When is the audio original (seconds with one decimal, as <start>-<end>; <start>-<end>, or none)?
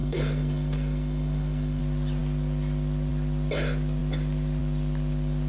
1.8-5.5